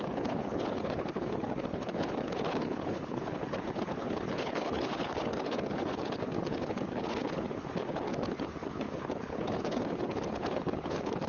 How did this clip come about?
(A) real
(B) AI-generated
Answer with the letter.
B